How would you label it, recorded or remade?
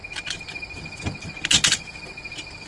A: recorded